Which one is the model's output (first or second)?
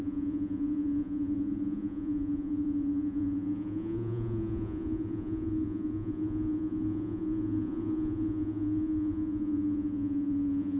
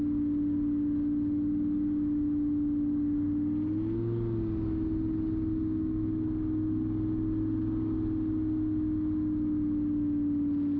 first